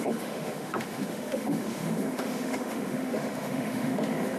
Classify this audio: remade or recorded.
remade